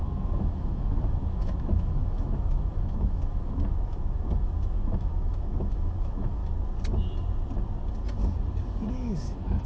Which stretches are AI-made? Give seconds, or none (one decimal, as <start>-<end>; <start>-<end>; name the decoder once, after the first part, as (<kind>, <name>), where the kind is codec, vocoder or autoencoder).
0.0-6.4 (autoencoder, DAC-VAE); 8.9-9.7

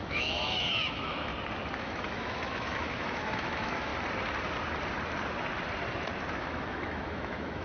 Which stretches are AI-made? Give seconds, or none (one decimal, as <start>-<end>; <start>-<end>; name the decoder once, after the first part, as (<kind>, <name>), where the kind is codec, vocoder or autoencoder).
0.0-1.3 (autoencoder, DAC-VAE); 1.8-3.9; 6.4-7.6

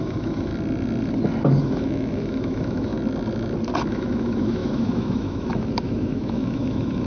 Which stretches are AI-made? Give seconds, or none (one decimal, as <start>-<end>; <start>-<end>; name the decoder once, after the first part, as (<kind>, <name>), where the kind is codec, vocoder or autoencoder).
0.0-0.5 (autoencoder, DAC-VAE); 1.6-2.9; 3.9-7.1

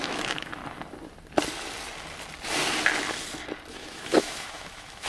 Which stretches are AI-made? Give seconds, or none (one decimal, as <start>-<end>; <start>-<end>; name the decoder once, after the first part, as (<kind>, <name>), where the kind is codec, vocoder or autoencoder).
0.0-0.6 (autoencoder, DAC-VAE); 3.7-5.1

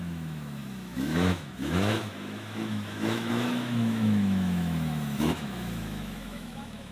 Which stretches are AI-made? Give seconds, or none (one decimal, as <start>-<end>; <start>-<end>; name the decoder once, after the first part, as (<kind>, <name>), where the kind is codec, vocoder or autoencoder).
0.0-6.9 (autoencoder, DAC-VAE)

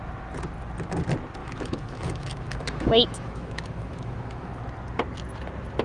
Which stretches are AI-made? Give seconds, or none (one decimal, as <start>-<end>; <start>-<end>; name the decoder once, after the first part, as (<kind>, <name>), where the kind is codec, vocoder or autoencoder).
1.4-4.6 (autoencoder, DAC-VAE)

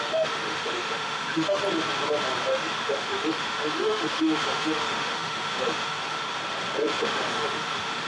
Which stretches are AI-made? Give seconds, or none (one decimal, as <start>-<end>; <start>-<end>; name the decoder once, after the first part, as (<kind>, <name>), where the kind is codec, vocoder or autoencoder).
0.0-1.6 (autoencoder, DAC-VAE); 2.5-6.4; 7.0-8.1

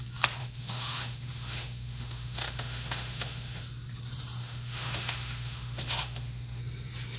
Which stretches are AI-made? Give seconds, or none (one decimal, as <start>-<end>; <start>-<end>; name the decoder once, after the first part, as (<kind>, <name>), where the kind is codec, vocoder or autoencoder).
0.4-3.6 (autoencoder, DAC-VAE); 4.4-6.6